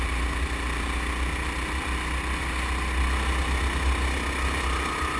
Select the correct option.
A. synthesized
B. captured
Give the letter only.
B